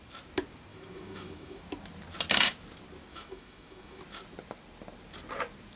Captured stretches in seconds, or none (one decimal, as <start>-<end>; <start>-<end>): 0.0-0.7; 1.6-3.1; 4.0-5.8